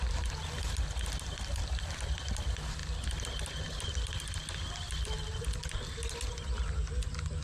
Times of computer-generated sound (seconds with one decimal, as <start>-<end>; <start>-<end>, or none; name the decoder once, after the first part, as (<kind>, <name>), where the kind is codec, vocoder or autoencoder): none